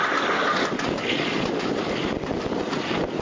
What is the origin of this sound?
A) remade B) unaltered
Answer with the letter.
B